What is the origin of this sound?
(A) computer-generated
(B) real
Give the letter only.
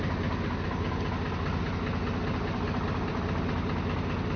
B